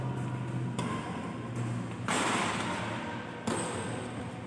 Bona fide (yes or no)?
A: yes